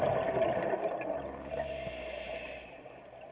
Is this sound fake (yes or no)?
no